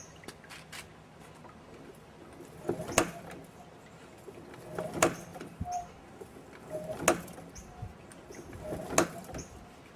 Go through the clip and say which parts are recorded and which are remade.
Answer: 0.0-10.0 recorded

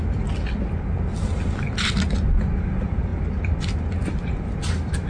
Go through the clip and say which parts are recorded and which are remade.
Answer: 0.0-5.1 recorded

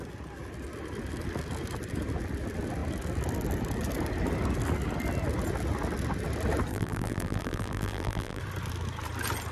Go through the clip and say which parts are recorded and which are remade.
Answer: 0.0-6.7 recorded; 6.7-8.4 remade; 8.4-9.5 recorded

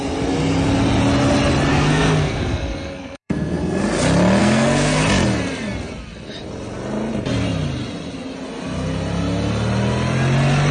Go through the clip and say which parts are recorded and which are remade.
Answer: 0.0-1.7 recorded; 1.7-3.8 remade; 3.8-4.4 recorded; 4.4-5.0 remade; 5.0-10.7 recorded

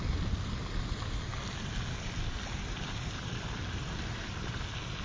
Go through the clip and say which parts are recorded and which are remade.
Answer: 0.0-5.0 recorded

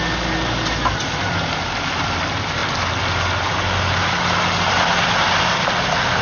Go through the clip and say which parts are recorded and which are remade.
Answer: 0.0-6.2 recorded